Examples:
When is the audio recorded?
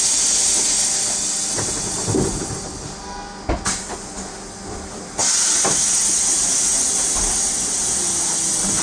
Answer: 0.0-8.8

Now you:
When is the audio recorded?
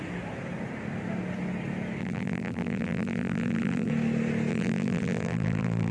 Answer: 0.0-2.0; 3.9-4.5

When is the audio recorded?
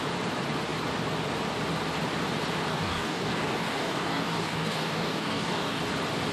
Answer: 0.0-2.7; 5.8-6.3